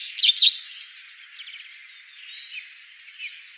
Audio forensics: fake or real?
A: real